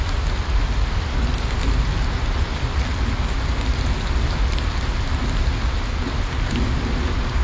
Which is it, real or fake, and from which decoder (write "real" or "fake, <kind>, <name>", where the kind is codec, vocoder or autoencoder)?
real